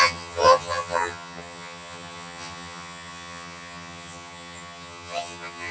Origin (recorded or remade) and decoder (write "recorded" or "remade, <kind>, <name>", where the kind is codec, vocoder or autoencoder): remade, vocoder, HiFi-GAN